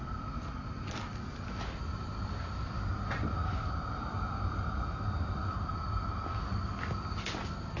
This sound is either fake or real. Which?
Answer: real